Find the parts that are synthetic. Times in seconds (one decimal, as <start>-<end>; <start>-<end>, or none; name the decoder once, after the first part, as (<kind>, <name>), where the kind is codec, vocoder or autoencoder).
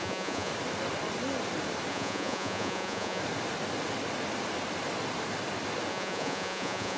0.0-0.5 (vocoder, Vocos); 1.9-3.2; 5.9-7.0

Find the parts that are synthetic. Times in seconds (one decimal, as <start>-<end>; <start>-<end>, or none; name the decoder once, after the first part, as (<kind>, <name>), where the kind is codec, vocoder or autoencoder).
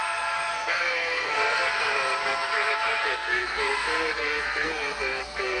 0.0-5.6 (codec, SNAC)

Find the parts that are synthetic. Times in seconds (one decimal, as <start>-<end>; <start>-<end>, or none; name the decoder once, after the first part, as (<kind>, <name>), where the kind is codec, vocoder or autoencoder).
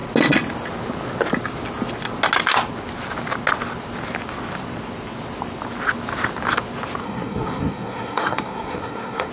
7.0-9.3 (codec, SNAC)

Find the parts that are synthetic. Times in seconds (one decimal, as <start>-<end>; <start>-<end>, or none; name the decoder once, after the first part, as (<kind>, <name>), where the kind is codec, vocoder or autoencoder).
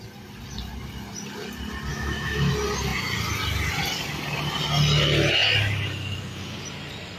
1.9-2.5 (autoencoder, DAC-VAE)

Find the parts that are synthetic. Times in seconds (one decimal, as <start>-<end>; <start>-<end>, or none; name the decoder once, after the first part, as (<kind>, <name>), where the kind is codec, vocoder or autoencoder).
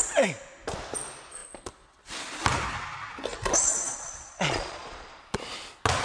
3.7-5.2 (vocoder, Vocos)